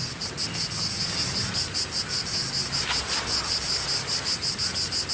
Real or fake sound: real